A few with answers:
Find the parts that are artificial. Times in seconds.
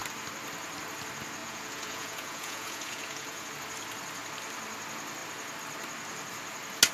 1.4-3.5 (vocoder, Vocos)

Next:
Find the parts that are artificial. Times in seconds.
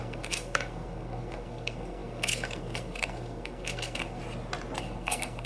0.0-4.2 (codec, SNAC); 4.8-5.5